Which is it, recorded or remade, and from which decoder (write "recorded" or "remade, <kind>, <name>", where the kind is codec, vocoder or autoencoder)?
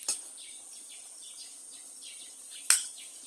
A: recorded